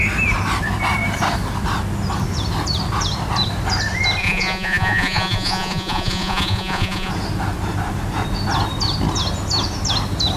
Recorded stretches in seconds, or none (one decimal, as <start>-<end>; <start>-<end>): 0.0-4.2; 7.1-10.4